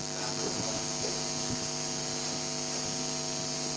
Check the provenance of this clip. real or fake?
real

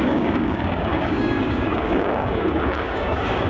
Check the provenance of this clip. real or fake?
fake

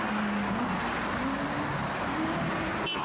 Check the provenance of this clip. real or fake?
real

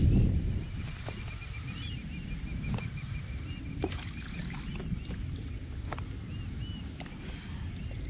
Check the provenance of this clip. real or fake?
real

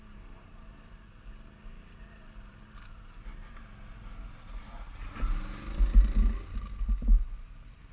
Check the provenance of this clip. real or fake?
real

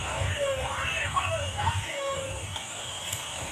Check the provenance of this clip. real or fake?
fake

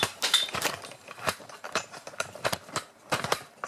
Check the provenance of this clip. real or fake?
real